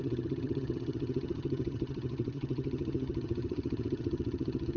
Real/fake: fake